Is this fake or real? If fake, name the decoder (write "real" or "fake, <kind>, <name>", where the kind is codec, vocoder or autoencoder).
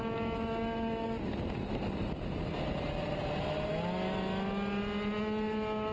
real